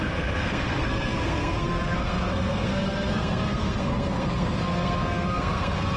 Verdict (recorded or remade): remade